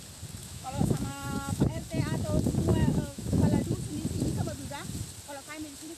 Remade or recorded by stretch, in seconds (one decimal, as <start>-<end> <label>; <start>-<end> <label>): 0.0-0.4 recorded; 0.4-1.8 remade; 1.8-2.7 recorded; 2.7-3.4 remade; 3.4-6.0 recorded